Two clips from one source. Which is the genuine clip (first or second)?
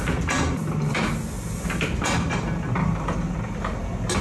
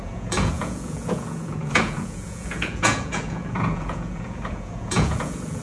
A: first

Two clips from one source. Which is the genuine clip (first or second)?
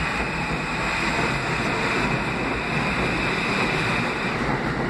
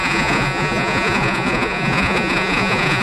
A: first